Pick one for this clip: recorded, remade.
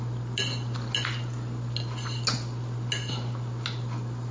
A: recorded